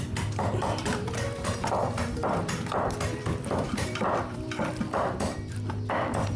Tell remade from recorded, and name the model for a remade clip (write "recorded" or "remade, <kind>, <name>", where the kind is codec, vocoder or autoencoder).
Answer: remade, vocoder, BigVGAN v2